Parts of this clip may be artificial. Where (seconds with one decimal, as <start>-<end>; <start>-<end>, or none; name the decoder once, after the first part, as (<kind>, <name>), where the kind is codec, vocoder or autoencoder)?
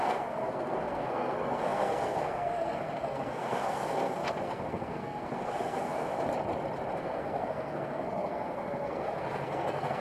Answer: 0.0-6.1 (codec, SNAC); 7.0-10.0